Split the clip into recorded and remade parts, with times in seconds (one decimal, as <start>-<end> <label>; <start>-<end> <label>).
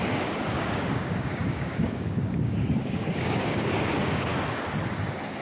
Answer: 0.0-4.3 remade; 4.3-5.4 recorded